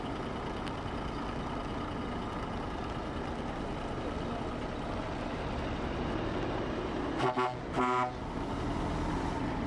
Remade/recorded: recorded